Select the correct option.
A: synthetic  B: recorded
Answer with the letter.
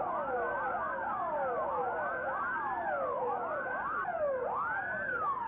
B